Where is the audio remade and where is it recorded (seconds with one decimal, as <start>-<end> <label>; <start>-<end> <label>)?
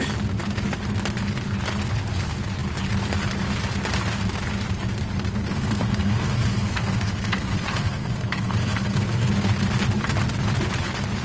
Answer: 0.0-5.4 recorded; 5.4-9.3 remade; 9.3-11.2 recorded